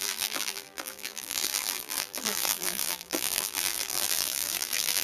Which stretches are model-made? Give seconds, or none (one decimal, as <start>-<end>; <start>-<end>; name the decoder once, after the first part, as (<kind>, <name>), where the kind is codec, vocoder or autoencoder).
0.0-5.0 (vocoder, BigVGAN v2)